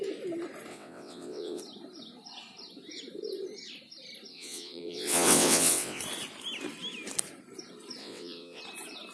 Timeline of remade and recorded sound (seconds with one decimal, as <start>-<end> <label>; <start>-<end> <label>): 0.0-0.7 recorded; 0.7-1.6 remade; 1.6-4.3 recorded; 4.3-6.0 remade; 6.0-8.0 recorded; 8.0-8.6 remade; 8.6-9.1 recorded

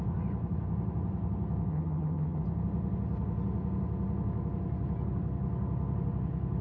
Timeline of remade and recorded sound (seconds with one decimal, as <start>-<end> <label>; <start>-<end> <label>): 0.0-1.7 recorded; 1.7-2.4 remade; 2.4-6.6 recorded

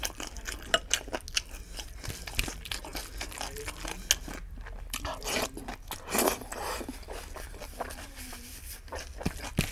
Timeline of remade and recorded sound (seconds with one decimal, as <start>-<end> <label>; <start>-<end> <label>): 0.0-9.7 recorded

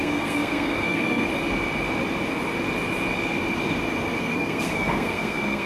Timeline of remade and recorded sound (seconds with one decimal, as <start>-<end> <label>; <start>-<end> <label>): 0.0-1.3 remade; 1.3-4.2 recorded; 4.2-5.7 remade